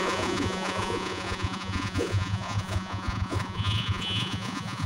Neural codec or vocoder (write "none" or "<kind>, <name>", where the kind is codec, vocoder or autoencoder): vocoder, Vocos